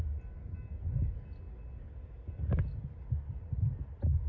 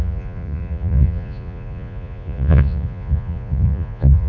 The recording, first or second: first